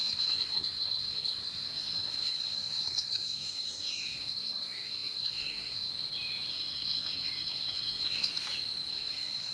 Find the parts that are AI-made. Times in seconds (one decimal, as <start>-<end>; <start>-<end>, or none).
0.0-5.9; 6.5-8.3; 8.9-9.5